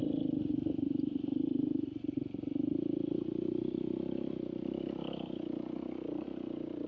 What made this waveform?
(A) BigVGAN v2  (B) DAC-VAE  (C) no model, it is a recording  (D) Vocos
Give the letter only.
C